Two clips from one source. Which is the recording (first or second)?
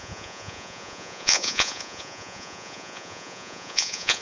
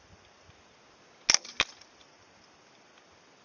second